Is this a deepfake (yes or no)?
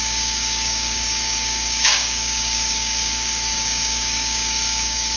yes